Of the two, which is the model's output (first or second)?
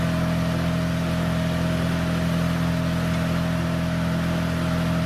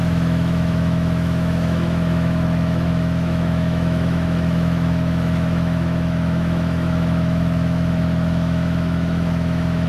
second